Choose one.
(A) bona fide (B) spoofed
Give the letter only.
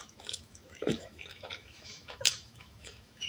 B